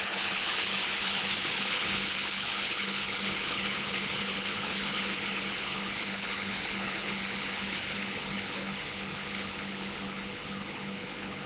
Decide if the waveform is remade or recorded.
remade